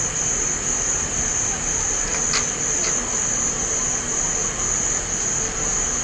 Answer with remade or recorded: recorded